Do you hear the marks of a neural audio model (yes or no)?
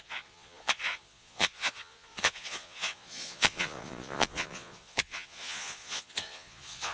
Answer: yes